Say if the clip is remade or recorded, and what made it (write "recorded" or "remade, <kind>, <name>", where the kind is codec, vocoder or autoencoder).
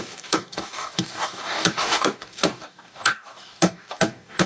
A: remade, codec, DAC